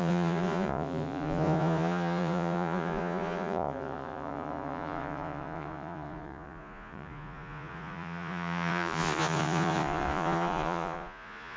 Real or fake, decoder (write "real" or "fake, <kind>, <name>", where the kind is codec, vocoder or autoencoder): fake, vocoder, Vocos